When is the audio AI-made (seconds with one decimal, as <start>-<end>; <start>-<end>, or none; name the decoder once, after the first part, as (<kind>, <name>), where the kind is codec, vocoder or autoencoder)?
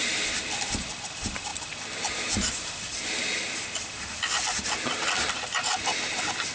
none